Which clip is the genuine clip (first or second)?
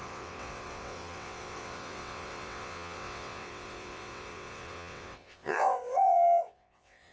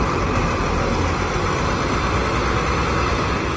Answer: second